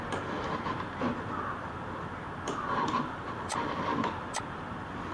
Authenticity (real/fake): fake